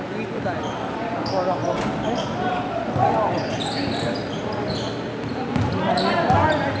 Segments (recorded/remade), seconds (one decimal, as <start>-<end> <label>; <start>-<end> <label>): 0.0-6.8 recorded

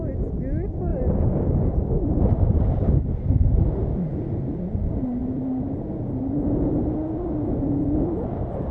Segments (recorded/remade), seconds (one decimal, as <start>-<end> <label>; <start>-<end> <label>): 0.0-0.9 recorded; 0.9-2.7 remade; 2.7-5.2 recorded; 5.2-6.3 remade; 6.3-8.7 recorded

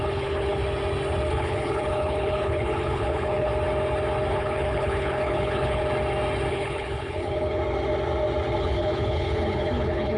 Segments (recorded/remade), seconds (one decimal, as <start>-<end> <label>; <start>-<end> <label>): 0.0-0.6 remade; 0.6-1.3 recorded; 1.3-3.5 remade; 3.5-4.3 recorded; 4.3-5.8 remade; 5.8-6.5 recorded; 6.5-7.6 remade; 7.6-8.6 recorded; 8.6-10.2 remade

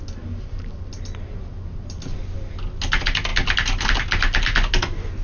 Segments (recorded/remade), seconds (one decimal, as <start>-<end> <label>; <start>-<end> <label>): 0.0-5.2 recorded

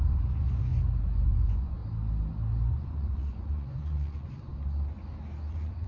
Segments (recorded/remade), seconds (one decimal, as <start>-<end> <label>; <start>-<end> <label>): 0.0-1.8 remade; 1.8-2.7 recorded; 2.7-4.5 remade; 4.5-5.5 recorded; 5.5-5.9 remade

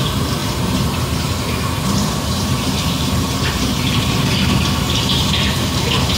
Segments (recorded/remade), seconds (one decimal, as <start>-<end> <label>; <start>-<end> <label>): 0.0-0.4 recorded; 0.4-4.1 remade; 4.1-6.2 recorded

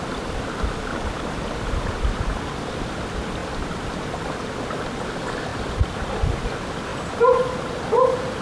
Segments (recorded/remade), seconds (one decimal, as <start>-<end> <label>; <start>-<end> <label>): 0.0-0.9 recorded; 0.9-1.9 remade; 1.9-3.4 recorded; 3.4-4.2 remade; 4.2-5.5 recorded; 5.5-6.2 remade; 6.2-6.9 recorded; 6.9-7.7 remade; 7.7-8.4 recorded